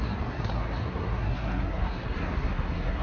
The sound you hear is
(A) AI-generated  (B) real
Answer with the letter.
A